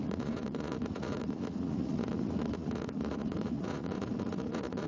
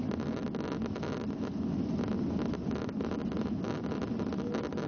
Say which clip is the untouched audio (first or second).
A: second